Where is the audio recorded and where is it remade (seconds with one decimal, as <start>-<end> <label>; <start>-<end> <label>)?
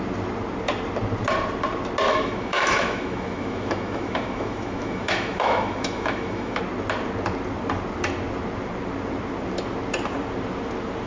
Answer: 0.0-2.1 recorded; 2.1-6.6 remade; 6.6-11.1 recorded